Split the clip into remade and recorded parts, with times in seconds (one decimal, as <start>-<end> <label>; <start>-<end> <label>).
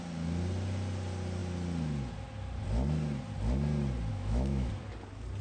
0.0-4.1 recorded; 4.1-4.7 remade; 4.7-5.4 recorded